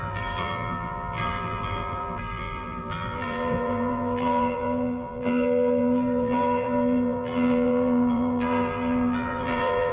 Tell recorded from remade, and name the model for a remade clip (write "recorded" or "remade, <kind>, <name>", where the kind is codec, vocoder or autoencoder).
remade, vocoder, BigVGAN v2